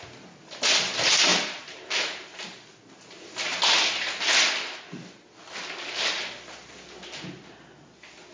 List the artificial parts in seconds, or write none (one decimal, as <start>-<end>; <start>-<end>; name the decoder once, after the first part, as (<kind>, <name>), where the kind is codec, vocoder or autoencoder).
none